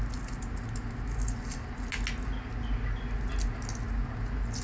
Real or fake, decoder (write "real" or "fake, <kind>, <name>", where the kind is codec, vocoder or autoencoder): real